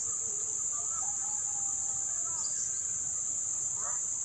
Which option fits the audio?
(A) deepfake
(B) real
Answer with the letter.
B